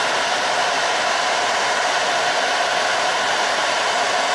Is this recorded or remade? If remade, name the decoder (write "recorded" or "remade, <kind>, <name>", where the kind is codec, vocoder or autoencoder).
recorded